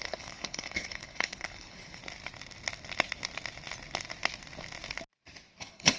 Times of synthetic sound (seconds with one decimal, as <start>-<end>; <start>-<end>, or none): 0.0-2.0; 5.6-6.0